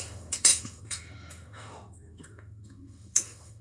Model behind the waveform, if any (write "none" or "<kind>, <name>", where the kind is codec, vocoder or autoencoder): autoencoder, DAC-VAE